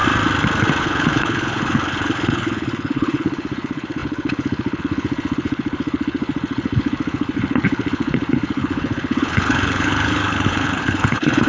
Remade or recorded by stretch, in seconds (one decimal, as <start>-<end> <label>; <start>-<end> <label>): 0.0-0.8 recorded; 0.8-11.5 remade